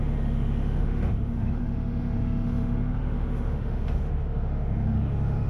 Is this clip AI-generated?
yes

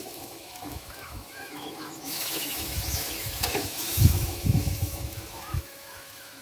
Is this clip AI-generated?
yes